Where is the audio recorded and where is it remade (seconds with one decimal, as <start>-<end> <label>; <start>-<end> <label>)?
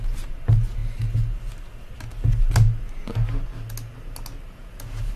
0.0-5.2 recorded